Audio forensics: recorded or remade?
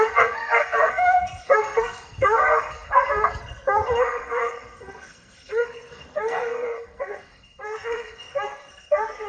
remade